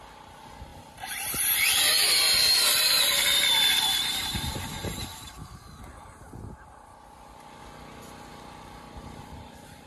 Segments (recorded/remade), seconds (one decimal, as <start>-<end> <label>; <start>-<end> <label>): 0.0-0.7 recorded; 0.7-4.8 remade; 4.8-8.3 recorded; 8.3-9.9 remade